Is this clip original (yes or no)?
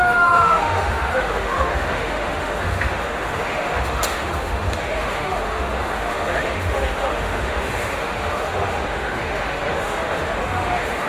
no